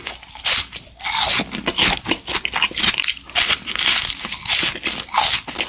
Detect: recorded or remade recorded